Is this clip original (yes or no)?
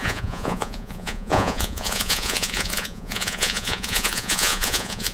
no